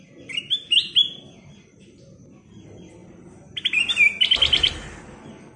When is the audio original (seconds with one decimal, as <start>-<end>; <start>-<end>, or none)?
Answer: 0.0-5.6